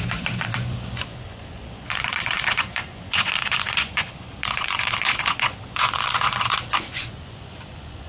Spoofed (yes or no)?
yes